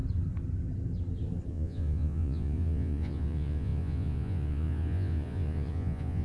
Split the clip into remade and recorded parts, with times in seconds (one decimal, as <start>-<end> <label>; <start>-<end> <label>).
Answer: 0.0-1.5 recorded; 1.5-6.2 remade